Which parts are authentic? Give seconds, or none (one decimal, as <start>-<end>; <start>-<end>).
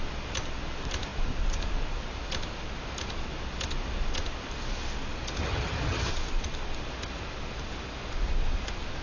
0.0-5.4; 6.1-9.0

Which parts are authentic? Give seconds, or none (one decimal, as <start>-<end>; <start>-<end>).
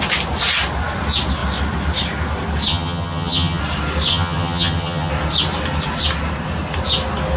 0.0-2.7; 3.6-4.1; 5.1-7.4